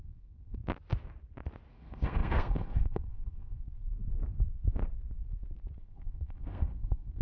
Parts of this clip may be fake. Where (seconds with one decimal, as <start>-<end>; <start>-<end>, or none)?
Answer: 0.0-0.6; 1.7-4.0; 5.8-7.2